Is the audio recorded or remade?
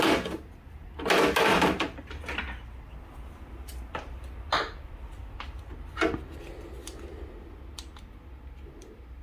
recorded